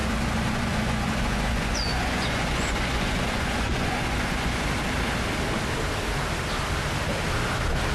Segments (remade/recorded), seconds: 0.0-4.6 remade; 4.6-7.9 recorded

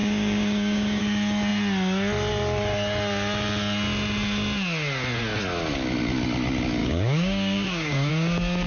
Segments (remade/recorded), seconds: 0.0-1.0 remade; 1.0-6.8 recorded; 6.8-8.1 remade; 8.1-8.7 recorded

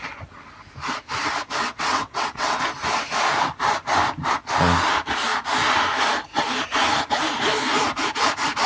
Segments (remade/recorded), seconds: 0.0-1.6 recorded; 1.6-2.6 remade; 2.6-8.7 recorded

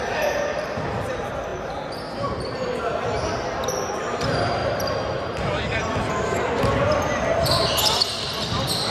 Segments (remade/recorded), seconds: 0.0-8.9 recorded

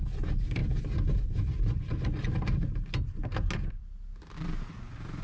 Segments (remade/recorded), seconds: 0.0-5.2 recorded

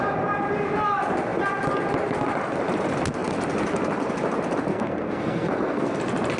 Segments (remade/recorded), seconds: 0.0-4.7 recorded; 4.7-6.0 remade; 6.0-6.4 recorded

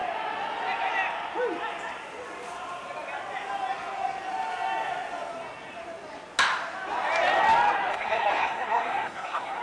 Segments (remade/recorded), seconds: 0.0-7.9 recorded; 7.9-9.6 remade

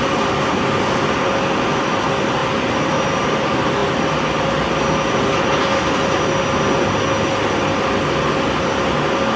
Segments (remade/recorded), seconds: 0.0-9.4 recorded